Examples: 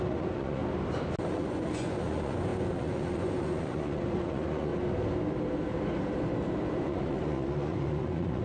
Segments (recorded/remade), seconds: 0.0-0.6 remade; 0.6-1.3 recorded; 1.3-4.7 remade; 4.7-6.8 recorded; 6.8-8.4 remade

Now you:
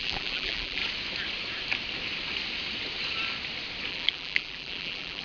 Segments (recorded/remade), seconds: 0.0-0.8 remade; 0.8-3.9 recorded; 3.9-5.2 remade

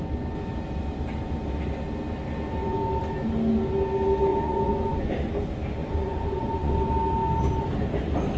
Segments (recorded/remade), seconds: 0.0-4.3 recorded; 4.3-5.1 remade; 5.1-5.8 recorded; 5.8-6.7 remade; 6.7-8.4 recorded

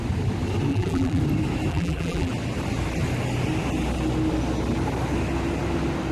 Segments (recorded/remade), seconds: 0.0-0.7 recorded; 0.7-1.2 remade; 1.2-1.7 recorded; 1.7-2.3 remade; 2.3-6.1 recorded

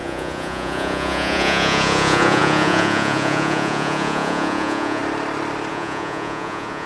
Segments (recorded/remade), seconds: 0.0-5.0 remade; 5.0-5.7 recorded; 5.7-6.9 remade

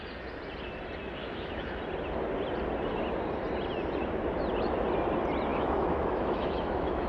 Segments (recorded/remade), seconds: 0.0-1.2 recorded; 1.2-1.8 remade; 1.8-5.5 recorded; 5.5-7.1 remade

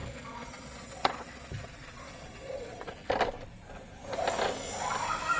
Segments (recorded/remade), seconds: 0.0-2.9 remade; 2.9-5.4 recorded